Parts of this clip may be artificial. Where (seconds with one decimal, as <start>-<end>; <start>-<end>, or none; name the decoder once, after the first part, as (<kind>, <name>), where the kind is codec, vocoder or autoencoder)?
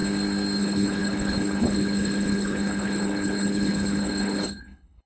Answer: 0.6-5.1 (codec, HILCodec)